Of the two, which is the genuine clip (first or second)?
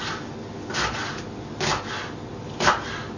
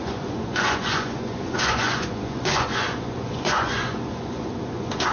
first